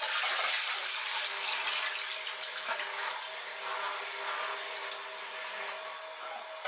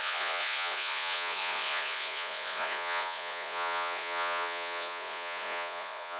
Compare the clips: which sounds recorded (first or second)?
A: first